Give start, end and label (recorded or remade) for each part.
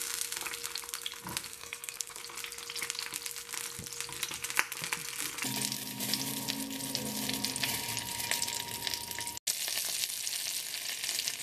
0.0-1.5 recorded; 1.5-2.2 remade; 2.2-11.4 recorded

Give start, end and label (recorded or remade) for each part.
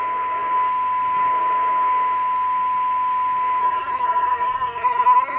0.0-3.6 recorded; 3.6-5.4 remade